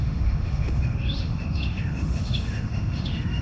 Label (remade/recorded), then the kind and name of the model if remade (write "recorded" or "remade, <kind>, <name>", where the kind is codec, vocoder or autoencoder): remade, autoencoder, DAC-VAE